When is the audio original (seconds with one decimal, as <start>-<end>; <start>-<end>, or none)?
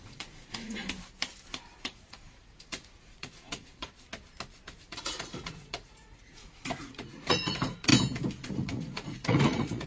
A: 0.8-1.8; 3.9-4.8; 7.9-8.5